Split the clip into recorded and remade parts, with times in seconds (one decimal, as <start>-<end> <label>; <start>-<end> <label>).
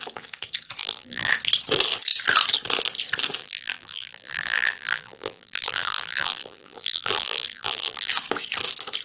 0.0-0.8 recorded; 0.8-1.3 remade; 1.3-3.4 recorded; 3.4-8.1 remade; 8.1-9.0 recorded